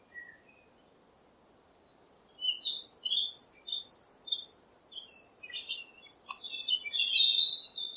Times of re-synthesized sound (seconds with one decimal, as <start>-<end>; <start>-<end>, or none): none